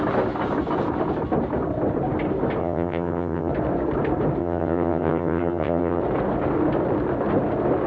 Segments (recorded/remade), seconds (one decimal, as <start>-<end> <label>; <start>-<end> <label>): 0.0-2.6 recorded; 2.6-3.5 remade; 3.5-4.4 recorded; 4.4-6.0 remade; 6.0-7.9 recorded